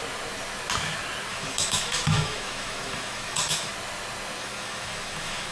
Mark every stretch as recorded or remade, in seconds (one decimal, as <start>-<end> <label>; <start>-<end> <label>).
0.0-1.3 recorded; 1.3-3.7 remade; 3.7-4.4 recorded; 4.4-5.5 remade